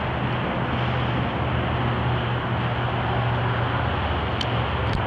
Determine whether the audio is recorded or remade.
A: recorded